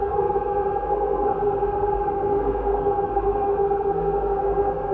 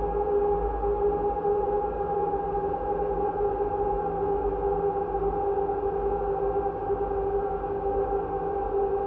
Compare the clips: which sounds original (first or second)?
second